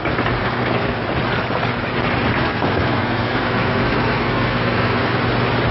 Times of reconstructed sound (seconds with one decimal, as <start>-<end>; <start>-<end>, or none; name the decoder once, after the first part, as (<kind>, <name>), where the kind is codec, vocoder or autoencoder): 0.4-1.0 (codec, SNAC); 2.3-5.2